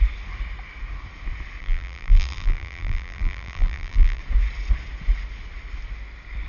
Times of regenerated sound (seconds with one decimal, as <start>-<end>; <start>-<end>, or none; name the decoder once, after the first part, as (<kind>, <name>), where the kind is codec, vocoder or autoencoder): 1.6-4.2 (vocoder, BigVGAN v2)